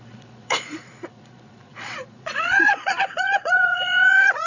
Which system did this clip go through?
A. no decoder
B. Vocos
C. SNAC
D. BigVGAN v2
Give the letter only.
B